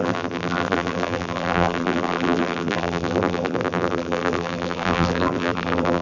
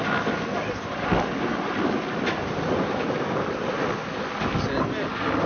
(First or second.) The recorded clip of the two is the second